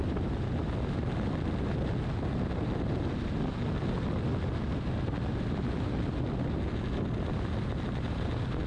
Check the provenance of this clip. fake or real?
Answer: real